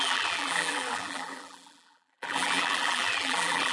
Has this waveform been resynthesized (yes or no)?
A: yes